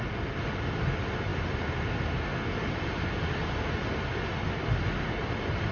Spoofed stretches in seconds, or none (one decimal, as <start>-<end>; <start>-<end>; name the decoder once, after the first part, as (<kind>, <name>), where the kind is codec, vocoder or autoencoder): none